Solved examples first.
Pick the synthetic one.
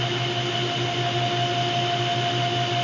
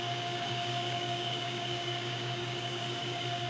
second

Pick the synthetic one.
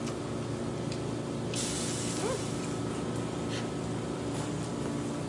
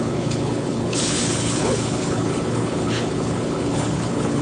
second